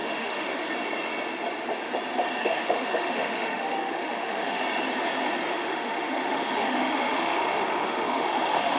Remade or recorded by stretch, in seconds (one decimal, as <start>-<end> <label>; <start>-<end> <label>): 0.0-0.7 remade; 0.7-2.4 recorded; 2.4-4.6 remade; 4.6-5.5 recorded; 5.5-8.8 remade